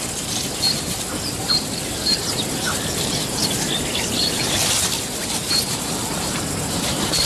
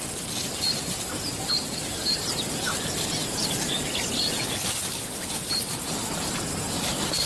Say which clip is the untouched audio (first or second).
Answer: second